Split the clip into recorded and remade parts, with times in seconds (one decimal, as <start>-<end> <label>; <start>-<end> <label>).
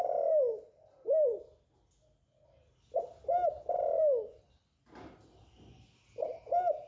0.0-6.9 recorded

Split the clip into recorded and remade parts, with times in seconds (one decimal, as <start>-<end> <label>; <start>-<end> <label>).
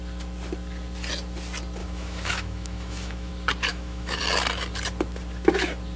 0.0-1.8 recorded; 1.8-3.3 remade; 3.3-3.7 recorded; 3.7-4.2 remade; 4.2-6.0 recorded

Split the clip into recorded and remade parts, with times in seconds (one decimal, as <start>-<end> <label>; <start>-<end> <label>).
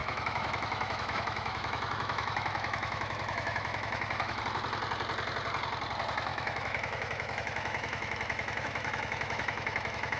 0.0-4.4 remade; 4.4-6.3 recorded; 6.3-10.2 remade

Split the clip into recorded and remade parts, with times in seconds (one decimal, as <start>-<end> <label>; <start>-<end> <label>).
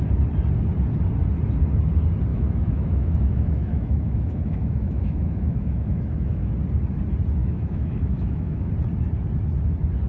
0.0-2.3 recorded; 2.3-6.5 remade; 6.5-7.4 recorded; 7.4-8.7 remade; 8.7-10.1 recorded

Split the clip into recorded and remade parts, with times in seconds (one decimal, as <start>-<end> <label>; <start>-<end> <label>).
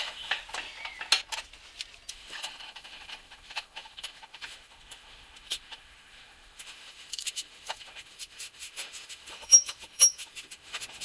0.0-0.4 remade; 0.4-2.1 recorded; 2.1-11.0 remade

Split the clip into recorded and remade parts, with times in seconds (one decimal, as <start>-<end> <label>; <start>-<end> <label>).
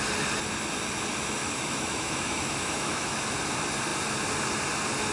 0.0-1.4 recorded; 1.4-3.3 remade; 3.3-5.1 recorded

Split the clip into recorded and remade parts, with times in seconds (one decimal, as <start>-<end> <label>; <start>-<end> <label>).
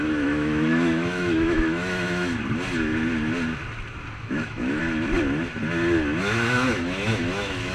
0.0-2.3 remade; 2.3-4.2 recorded; 4.2-4.8 remade; 4.8-6.2 recorded; 6.2-7.7 remade